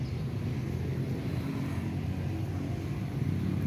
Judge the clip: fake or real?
real